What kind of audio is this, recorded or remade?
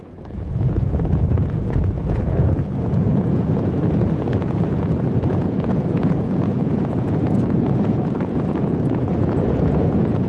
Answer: remade